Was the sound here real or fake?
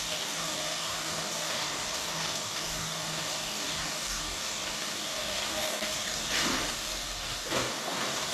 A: fake